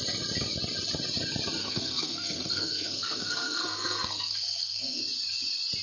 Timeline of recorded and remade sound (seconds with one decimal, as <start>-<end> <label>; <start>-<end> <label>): 0.0-1.6 recorded; 1.6-5.0 remade; 5.0-5.8 recorded